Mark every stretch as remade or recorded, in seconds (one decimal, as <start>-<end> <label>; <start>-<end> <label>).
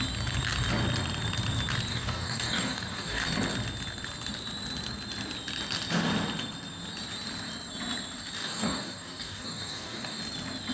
0.0-1.9 recorded; 1.9-3.2 remade; 3.2-8.4 recorded; 8.4-10.2 remade; 10.2-10.7 recorded